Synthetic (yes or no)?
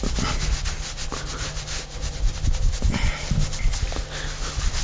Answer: no